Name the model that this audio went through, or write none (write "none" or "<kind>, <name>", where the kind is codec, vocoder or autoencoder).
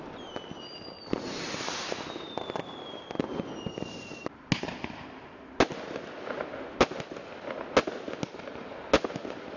none